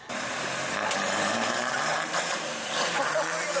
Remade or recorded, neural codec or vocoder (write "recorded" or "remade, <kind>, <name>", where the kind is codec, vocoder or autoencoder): recorded